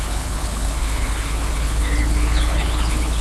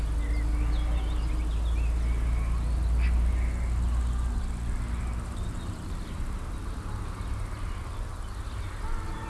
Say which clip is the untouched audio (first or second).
second